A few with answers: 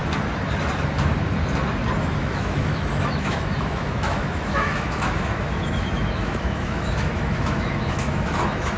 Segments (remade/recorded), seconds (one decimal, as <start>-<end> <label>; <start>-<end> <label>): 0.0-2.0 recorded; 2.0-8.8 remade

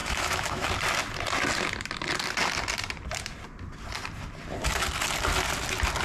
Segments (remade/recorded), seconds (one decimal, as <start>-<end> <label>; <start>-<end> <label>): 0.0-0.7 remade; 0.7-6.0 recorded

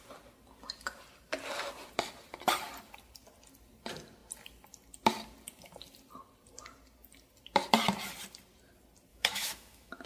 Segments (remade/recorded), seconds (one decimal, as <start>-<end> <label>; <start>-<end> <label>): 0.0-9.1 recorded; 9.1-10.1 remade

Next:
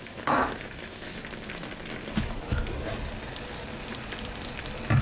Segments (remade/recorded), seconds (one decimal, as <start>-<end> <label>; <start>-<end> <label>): 0.0-1.1 remade; 1.1-2.2 recorded; 2.2-2.6 remade; 2.6-5.0 recorded